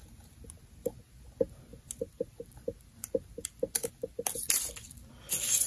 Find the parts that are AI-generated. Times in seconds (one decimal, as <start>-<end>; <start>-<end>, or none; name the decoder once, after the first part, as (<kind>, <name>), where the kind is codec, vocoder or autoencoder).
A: 1.7-5.1 (vocoder, BigVGAN v2)